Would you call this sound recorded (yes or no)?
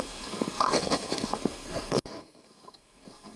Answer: no